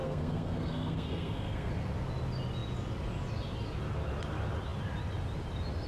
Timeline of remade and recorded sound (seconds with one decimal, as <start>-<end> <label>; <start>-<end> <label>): 0.0-1.7 remade; 1.7-5.9 recorded